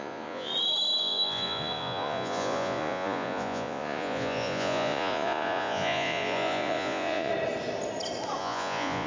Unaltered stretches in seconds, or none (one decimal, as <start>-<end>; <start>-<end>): 0.5-1.0; 7.3-8.4